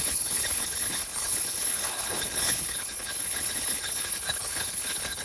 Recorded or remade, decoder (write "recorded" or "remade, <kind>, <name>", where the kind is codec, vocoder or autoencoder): remade, codec, HILCodec